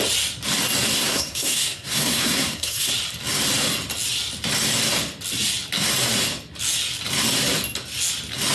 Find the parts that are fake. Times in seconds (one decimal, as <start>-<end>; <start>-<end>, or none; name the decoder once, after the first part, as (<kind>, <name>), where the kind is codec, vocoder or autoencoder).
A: 0.9-2.9 (codec, SNAC)